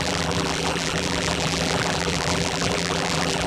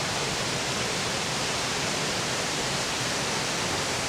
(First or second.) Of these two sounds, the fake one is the first